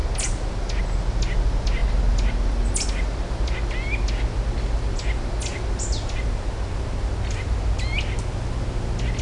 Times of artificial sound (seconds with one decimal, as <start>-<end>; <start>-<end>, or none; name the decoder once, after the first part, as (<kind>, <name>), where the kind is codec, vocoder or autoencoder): none